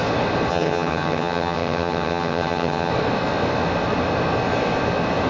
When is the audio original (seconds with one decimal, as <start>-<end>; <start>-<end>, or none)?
0.0-0.5; 2.9-5.3